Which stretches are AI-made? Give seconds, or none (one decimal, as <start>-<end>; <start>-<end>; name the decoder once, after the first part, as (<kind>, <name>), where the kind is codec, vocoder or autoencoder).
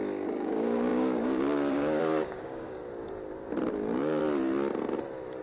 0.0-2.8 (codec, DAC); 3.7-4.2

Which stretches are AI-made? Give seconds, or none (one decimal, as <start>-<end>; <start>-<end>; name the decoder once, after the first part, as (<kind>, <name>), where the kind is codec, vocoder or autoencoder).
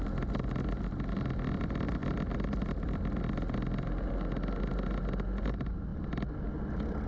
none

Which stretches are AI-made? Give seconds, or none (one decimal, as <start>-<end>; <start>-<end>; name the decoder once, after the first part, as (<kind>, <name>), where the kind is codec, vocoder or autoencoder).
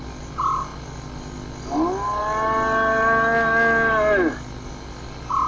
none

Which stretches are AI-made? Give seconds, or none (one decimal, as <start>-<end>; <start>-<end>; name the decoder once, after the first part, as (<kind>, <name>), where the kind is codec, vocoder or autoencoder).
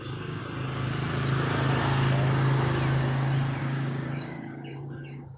0.0-0.4 (codec, DAC); 3.6-5.4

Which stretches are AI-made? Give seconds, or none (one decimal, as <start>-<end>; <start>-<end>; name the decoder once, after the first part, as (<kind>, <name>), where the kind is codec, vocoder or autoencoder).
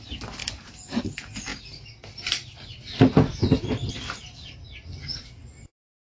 0.4-1.0 (vocoder, BigVGAN v2); 1.5-3.9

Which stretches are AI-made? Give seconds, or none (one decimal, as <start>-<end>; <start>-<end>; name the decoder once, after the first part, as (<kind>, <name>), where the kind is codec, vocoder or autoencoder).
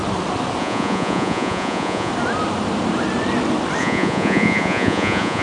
0.6-2.1 (vocoder, Vocos); 3.8-5.4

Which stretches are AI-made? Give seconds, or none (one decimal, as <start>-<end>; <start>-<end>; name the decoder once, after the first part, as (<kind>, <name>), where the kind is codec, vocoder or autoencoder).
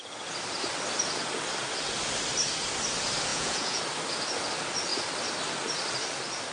3.3-3.8 (vocoder, Vocos)